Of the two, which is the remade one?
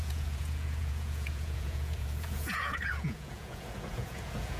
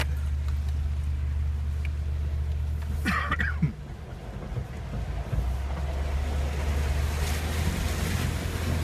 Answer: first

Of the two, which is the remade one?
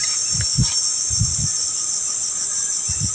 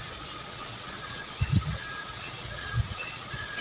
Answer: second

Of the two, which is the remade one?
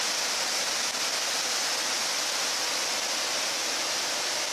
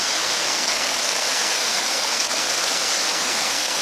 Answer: second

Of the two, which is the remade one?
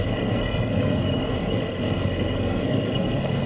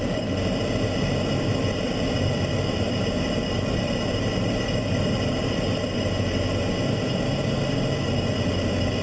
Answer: first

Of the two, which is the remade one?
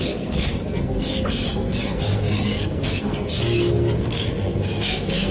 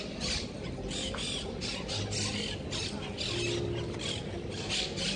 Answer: first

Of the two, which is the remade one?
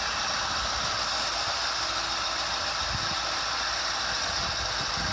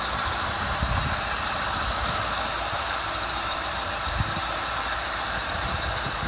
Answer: second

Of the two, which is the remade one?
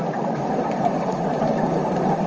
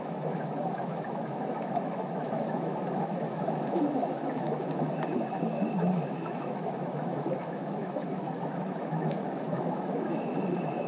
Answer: second